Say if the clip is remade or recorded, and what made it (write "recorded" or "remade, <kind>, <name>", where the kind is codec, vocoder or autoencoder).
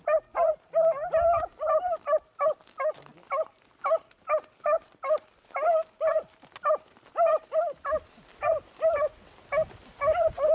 recorded